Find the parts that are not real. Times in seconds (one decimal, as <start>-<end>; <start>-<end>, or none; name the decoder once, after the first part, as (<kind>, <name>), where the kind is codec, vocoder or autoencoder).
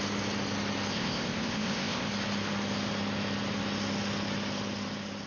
0.9-2.1 (codec, ZipCodec)